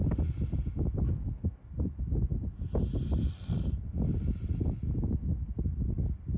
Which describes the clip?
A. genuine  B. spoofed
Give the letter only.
A